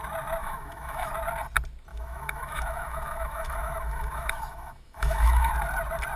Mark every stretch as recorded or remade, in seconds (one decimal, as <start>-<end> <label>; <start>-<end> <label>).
0.0-0.4 recorded; 0.4-1.1 remade; 1.1-1.9 recorded; 1.9-5.5 remade; 5.5-6.2 recorded